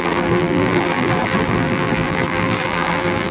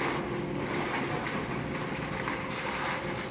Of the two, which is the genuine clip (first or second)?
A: second